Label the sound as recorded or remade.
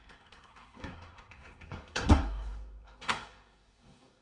remade